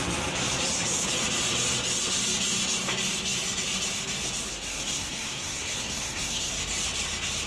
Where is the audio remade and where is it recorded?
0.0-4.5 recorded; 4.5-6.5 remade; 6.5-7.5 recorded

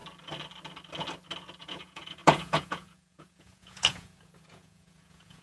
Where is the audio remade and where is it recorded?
0.0-1.6 recorded; 1.6-5.4 remade

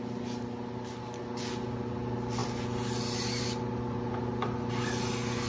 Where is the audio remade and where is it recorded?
0.0-5.5 recorded

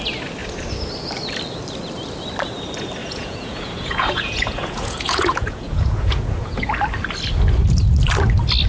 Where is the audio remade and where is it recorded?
0.0-3.0 recorded; 3.0-6.7 remade; 6.7-8.7 recorded

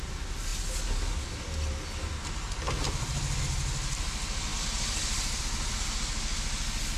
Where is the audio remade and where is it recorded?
0.0-4.5 recorded; 4.5-5.4 remade; 5.4-7.0 recorded

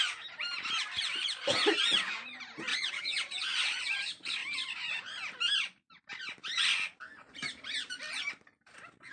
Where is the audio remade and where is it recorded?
0.0-2.7 recorded; 2.7-3.8 remade; 3.8-9.1 recorded

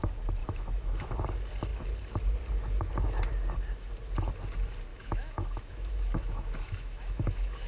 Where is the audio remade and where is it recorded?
0.0-0.4 recorded; 0.4-1.1 remade; 1.1-4.9 recorded; 4.9-7.7 remade

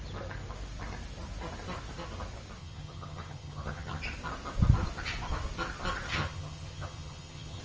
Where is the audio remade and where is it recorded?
0.0-2.6 recorded; 2.6-4.0 remade; 4.0-6.1 recorded; 6.1-7.6 remade